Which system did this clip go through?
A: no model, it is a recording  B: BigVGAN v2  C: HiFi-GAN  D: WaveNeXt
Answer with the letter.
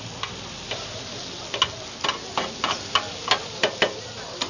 A